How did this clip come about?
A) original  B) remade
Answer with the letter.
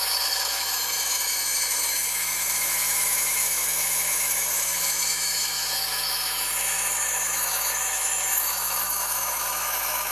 B